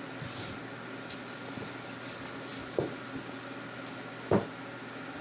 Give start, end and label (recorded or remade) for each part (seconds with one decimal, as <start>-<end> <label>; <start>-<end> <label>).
0.0-5.2 recorded